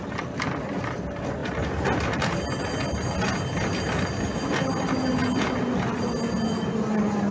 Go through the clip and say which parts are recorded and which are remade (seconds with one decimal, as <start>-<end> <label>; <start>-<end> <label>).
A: 0.0-7.3 recorded